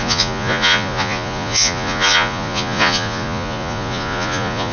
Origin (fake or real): fake